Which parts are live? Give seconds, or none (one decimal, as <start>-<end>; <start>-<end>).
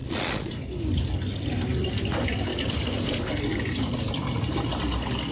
0.5-5.3